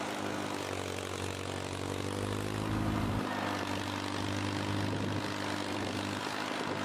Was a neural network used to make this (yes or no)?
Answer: no